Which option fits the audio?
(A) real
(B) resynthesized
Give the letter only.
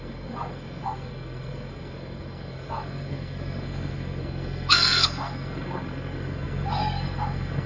B